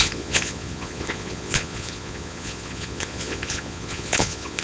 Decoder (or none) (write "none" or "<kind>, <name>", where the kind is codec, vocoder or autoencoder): vocoder, Vocos